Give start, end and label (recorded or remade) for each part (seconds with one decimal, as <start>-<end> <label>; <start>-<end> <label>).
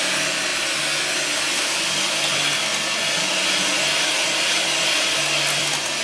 0.0-6.0 recorded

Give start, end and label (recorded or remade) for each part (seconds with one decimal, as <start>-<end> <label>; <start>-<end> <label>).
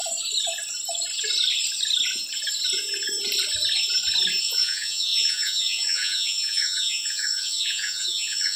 0.0-4.4 recorded; 4.4-8.6 remade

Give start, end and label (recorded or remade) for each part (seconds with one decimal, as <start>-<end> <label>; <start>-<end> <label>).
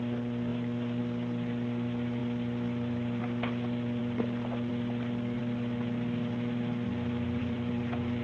0.0-5.4 remade; 5.4-7.4 recorded; 7.4-8.2 remade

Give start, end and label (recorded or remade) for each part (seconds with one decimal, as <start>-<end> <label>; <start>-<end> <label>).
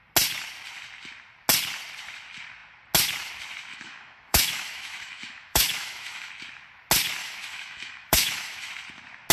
0.0-3.7 recorded; 3.7-6.3 remade; 6.3-7.2 recorded; 7.2-8.7 remade; 8.7-9.3 recorded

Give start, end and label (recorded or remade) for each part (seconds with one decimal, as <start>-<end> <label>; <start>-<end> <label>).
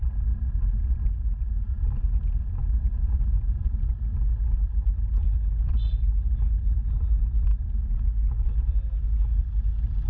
0.0-10.1 recorded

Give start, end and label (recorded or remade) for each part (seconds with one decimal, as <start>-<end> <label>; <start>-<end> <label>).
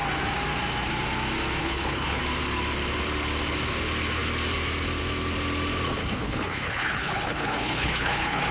0.0-1.6 recorded; 1.6-2.2 remade; 2.2-6.0 recorded; 6.0-8.5 remade